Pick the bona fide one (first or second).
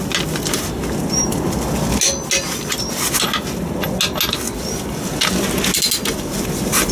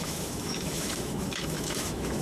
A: first